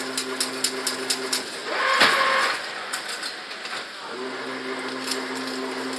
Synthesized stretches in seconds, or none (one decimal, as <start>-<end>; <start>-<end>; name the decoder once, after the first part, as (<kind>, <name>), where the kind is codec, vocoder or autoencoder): 1.6-3.0 (vocoder, Vocos)